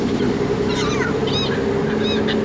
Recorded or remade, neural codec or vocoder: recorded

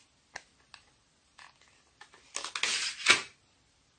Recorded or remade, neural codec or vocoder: recorded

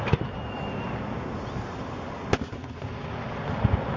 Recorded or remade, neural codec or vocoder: recorded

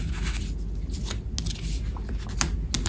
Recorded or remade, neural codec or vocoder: recorded